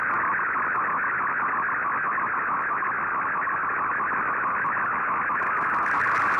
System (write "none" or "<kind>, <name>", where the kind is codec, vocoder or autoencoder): none